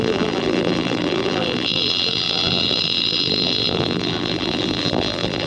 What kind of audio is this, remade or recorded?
remade